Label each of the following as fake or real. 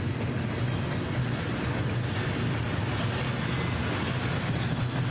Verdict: real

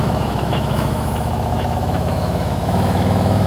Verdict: fake